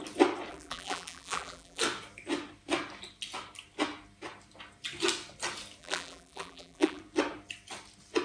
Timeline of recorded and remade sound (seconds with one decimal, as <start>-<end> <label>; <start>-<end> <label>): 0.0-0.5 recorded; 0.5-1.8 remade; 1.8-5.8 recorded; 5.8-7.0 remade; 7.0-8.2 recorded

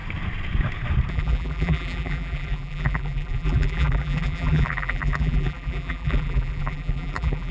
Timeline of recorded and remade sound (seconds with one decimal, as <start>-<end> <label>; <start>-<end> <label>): 0.0-1.1 recorded; 1.1-7.5 remade

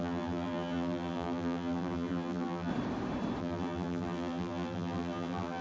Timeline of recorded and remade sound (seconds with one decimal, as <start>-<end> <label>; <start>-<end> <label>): 0.0-2.7 remade; 2.7-3.4 recorded; 3.4-5.6 remade